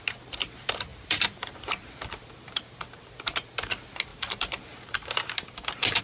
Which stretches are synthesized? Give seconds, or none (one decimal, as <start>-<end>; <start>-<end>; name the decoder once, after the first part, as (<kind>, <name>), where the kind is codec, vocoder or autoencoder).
0.9-3.1 (vocoder, BigVGAN v2); 4.1-6.0